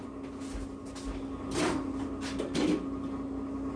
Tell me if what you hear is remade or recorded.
recorded